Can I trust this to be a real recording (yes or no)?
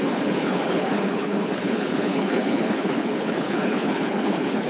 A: no